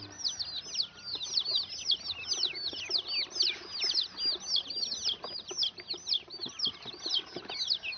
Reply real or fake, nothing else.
real